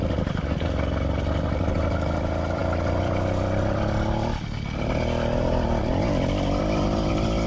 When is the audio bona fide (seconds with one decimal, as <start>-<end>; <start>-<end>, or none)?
0.0-7.5

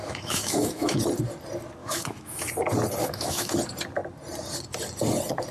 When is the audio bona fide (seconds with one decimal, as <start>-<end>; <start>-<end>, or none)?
1.0-1.8; 2.4-3.0; 3.5-5.5

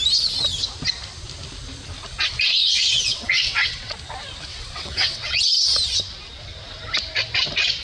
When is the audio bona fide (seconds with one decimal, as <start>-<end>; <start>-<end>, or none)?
0.0-2.6; 3.9-4.5; 5.4-7.8

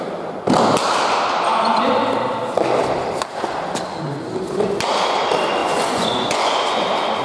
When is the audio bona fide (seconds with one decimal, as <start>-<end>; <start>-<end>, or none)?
0.0-5.6; 6.8-7.2